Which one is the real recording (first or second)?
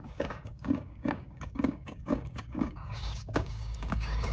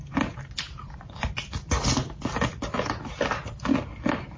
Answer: second